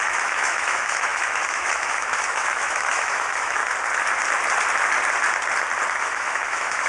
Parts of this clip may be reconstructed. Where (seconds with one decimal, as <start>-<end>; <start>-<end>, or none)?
0.0-3.6; 6.0-6.9